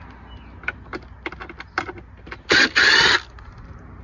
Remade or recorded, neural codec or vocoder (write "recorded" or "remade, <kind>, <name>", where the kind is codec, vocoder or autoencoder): recorded